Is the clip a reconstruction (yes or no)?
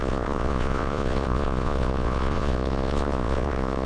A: yes